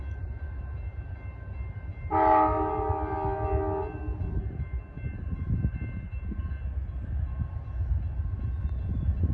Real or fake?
real